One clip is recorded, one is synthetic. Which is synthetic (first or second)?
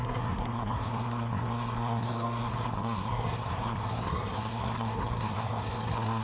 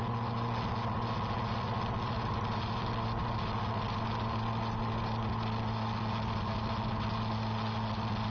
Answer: first